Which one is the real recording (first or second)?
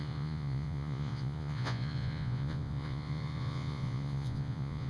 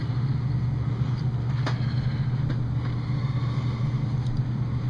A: second